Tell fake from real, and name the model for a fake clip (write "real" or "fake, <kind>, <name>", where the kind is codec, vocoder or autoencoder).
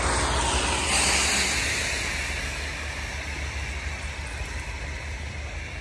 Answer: real